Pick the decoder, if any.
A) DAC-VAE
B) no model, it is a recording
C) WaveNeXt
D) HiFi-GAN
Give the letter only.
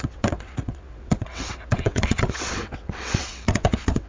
C